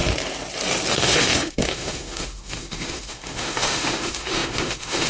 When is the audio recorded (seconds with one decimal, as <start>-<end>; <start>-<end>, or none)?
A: 0.0-0.9